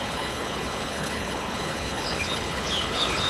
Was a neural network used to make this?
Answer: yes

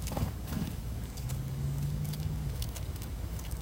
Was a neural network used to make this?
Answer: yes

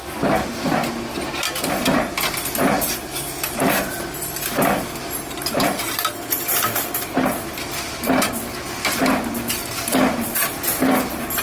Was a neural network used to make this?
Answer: no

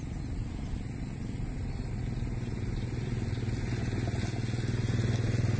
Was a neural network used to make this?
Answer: no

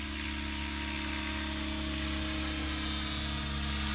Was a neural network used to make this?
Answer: no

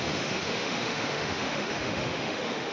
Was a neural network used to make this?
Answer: yes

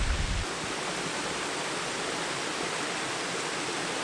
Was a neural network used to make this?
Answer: no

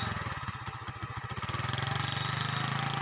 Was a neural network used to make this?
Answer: no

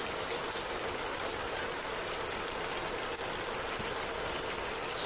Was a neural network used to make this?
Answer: no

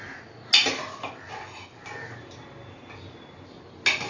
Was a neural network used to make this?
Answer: no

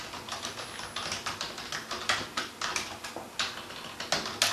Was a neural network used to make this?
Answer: no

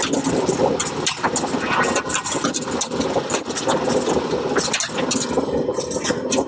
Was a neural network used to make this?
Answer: no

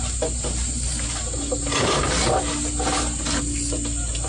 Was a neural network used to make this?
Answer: no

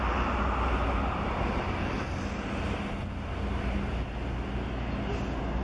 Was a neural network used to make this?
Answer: no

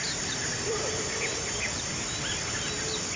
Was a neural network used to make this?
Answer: yes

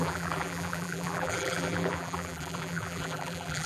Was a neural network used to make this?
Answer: yes